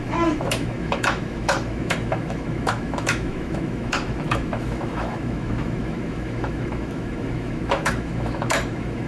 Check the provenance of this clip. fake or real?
fake